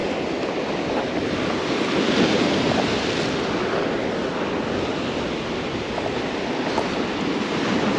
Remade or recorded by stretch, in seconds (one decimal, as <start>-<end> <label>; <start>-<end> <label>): 0.0-8.0 recorded